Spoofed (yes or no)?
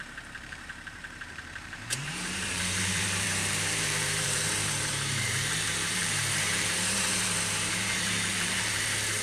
yes